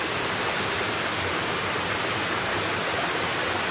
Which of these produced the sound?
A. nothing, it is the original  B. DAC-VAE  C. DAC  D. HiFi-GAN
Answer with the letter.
A